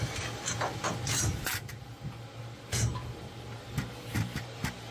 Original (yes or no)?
yes